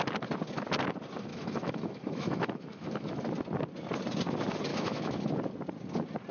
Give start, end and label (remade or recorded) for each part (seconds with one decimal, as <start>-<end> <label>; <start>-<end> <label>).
0.0-1.3 recorded; 1.3-3.2 remade; 3.2-4.7 recorded; 4.7-5.3 remade; 5.3-6.3 recorded